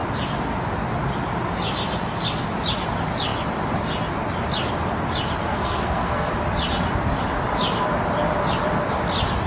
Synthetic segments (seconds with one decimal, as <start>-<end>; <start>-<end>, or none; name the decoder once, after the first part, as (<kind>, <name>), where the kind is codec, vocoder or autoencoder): 5.4-6.3 (codec, SNAC)